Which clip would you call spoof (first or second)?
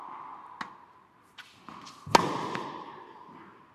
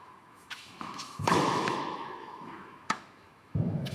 second